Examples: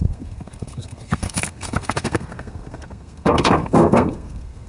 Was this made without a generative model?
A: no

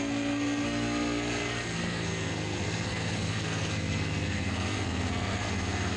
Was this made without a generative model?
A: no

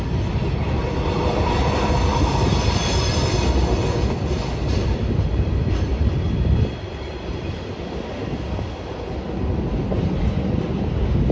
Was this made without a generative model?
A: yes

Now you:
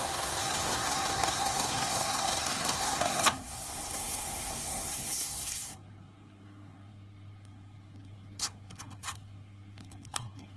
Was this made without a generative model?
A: no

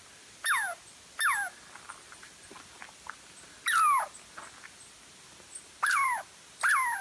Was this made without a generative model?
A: yes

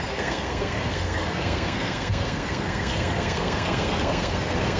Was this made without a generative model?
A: no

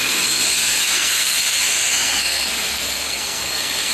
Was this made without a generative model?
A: no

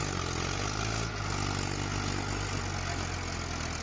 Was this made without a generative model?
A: yes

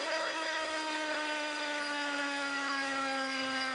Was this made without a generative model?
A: no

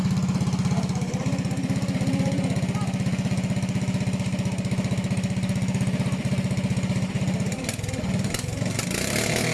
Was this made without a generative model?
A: yes